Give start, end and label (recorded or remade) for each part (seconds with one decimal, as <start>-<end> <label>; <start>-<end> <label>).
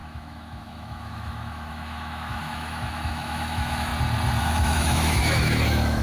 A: 0.0-3.9 remade; 3.9-4.4 recorded; 4.4-6.0 remade